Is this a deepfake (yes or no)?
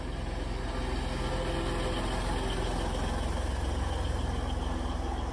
no